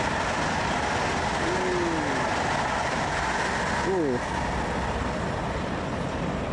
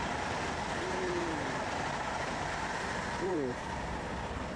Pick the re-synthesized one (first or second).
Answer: second